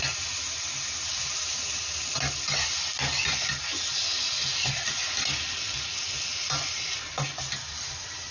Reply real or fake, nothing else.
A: real